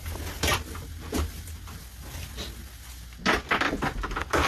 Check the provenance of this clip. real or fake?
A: real